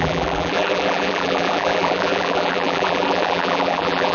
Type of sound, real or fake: fake